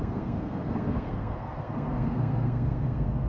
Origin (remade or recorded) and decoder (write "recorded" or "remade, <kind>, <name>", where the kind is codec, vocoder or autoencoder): remade, codec, SNAC